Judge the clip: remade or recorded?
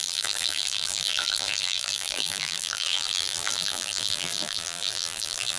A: remade